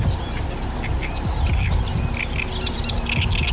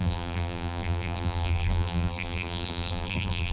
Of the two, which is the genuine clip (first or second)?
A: first